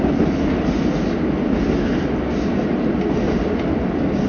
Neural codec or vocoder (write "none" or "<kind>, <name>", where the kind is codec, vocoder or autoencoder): none